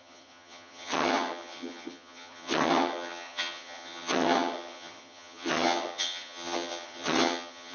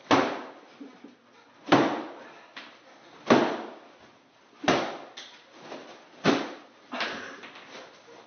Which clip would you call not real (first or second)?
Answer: first